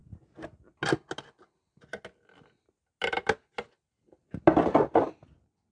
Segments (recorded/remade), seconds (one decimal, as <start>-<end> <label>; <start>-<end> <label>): 0.0-5.7 recorded